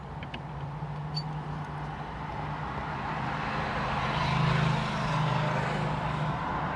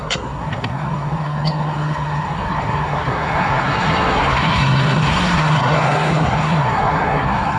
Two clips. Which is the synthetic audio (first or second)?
second